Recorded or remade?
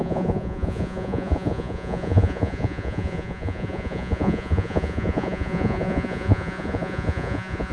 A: remade